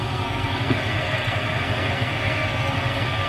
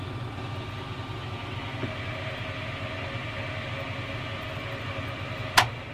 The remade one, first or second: first